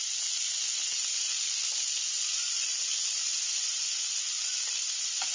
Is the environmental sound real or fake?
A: real